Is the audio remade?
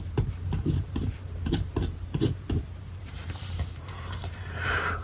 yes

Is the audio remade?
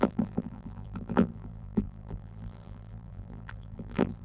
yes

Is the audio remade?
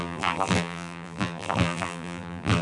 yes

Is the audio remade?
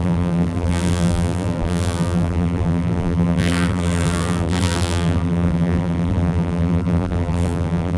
yes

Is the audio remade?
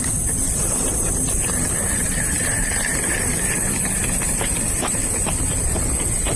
yes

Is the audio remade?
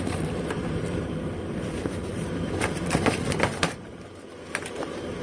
yes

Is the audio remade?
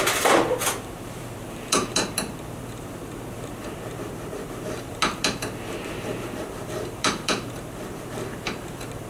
yes